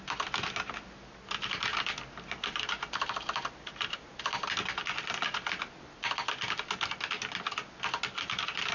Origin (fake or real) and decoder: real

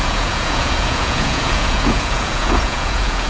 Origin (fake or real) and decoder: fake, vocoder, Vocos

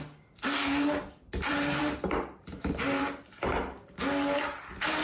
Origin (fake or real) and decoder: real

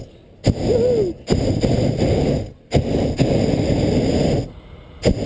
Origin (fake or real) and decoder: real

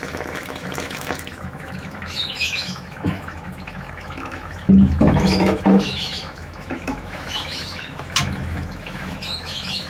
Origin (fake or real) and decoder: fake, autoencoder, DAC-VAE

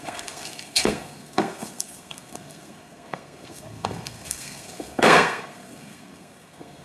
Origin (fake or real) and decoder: fake, codec, SNAC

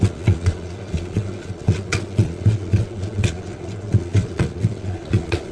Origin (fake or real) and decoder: fake, vocoder, Vocos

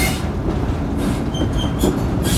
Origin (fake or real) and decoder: real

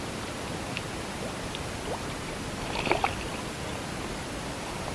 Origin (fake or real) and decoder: real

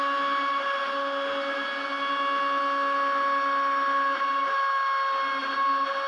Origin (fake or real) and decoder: real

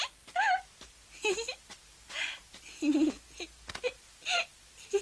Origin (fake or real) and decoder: real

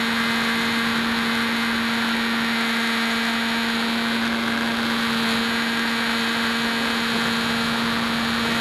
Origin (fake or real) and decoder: real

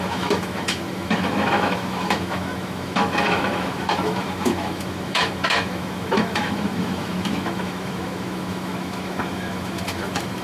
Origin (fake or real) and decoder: fake, autoencoder, DAC-VAE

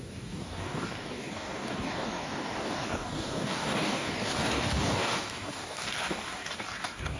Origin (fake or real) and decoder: fake, codec, DAC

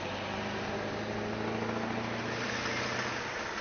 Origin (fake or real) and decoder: real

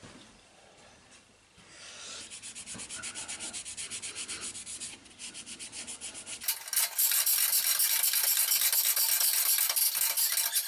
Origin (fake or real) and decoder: real